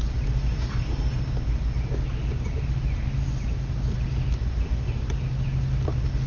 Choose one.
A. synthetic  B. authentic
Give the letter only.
B